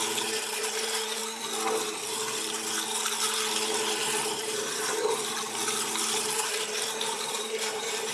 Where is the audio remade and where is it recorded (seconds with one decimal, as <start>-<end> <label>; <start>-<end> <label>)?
0.0-1.2 remade; 1.2-4.0 recorded; 4.0-5.2 remade; 5.2-6.1 recorded; 6.1-8.1 remade